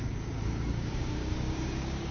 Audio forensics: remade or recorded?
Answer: remade